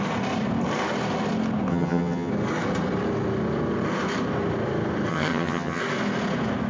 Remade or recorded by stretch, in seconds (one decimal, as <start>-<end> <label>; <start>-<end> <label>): 0.0-1.7 recorded; 1.7-2.3 remade; 2.3-5.1 recorded; 5.1-5.8 remade; 5.8-6.7 recorded